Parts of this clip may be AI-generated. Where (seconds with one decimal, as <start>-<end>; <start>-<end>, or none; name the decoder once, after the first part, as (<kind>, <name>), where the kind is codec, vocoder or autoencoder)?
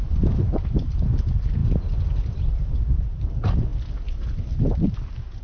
none